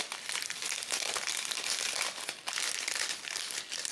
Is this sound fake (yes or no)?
no